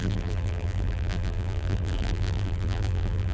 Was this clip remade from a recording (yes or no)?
yes